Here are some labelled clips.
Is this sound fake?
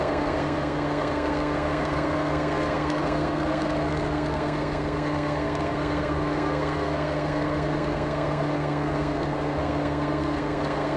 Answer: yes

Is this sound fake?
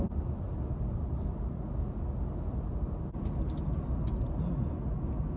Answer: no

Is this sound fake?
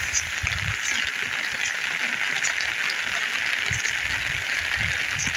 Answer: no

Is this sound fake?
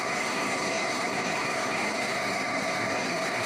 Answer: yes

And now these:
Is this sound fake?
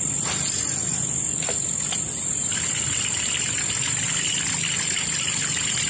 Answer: no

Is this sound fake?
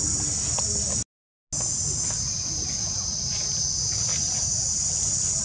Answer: no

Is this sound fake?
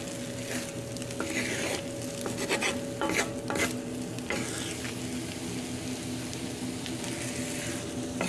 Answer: no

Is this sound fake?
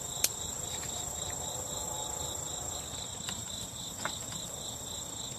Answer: no